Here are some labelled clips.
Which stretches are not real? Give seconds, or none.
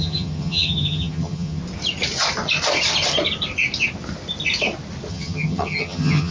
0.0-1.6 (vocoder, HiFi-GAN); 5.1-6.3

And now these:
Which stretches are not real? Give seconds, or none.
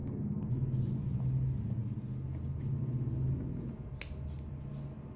0.0-0.5 (codec, SNAC)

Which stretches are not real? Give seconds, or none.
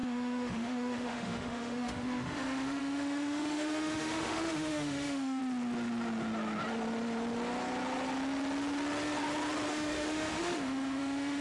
0.0-5.4 (autoencoder, DAC-VAE); 9.7-11.4